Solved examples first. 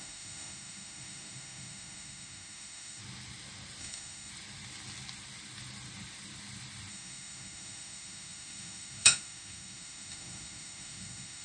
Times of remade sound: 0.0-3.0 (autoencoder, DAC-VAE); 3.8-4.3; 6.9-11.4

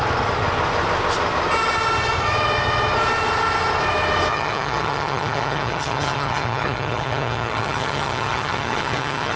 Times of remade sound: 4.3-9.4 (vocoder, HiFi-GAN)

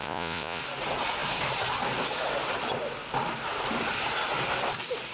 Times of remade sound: 0.0-0.6 (vocoder, Vocos)

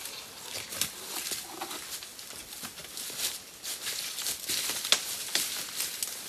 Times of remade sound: none

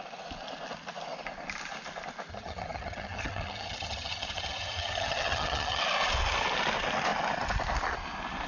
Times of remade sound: 2.3-5.8 (vocoder, HiFi-GAN)

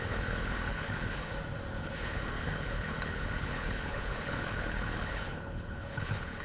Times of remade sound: 0.0-1.3 (codec, HILCodec); 1.8-6.4

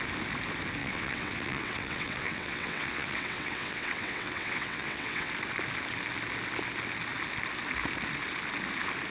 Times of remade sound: 0.8-5.3 (vocoder, WaveNeXt)

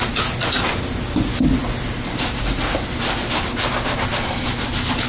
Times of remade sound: none